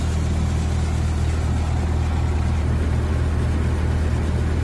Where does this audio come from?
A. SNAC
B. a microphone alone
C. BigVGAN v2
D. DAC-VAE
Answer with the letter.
B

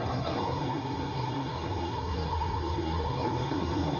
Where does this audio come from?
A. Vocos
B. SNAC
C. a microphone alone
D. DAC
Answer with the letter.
B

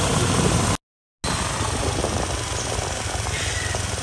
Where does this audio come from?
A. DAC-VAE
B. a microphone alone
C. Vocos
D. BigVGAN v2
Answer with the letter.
B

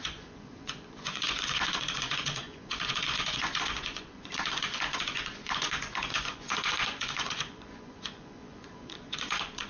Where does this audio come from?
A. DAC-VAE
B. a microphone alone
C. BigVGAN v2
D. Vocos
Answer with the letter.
D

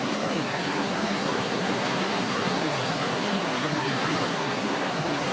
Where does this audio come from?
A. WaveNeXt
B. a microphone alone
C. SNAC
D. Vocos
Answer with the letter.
C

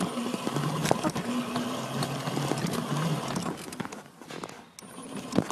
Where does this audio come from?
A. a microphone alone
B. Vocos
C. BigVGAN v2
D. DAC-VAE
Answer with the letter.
A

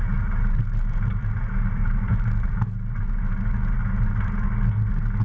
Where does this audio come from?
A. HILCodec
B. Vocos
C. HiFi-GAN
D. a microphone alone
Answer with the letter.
D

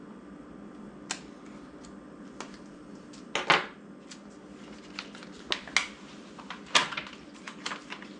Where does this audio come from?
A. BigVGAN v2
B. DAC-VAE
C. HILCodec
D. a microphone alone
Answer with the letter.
D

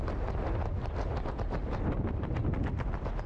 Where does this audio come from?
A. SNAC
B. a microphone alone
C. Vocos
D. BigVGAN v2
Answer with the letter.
B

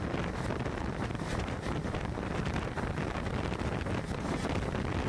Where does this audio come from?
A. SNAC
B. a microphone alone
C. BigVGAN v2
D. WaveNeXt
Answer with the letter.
B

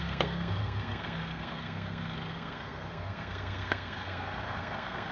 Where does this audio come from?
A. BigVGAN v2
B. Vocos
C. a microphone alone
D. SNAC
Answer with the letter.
D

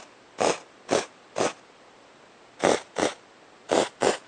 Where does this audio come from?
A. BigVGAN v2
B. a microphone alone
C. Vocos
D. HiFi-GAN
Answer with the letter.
B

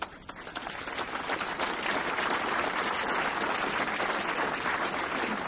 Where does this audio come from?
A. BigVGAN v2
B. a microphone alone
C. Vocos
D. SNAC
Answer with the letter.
B